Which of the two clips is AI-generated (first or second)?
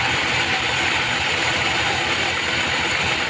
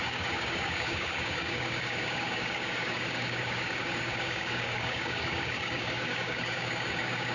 second